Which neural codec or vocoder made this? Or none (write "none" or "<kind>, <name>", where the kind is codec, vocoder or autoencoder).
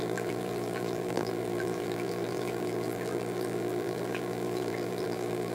vocoder, BigVGAN v2